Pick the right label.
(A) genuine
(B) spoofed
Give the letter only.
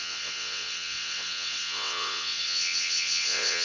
B